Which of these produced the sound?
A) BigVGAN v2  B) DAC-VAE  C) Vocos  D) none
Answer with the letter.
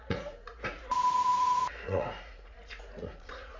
C